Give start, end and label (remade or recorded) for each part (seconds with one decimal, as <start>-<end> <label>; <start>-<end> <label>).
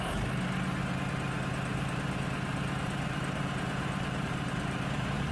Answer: 0.0-1.7 recorded; 1.7-5.3 remade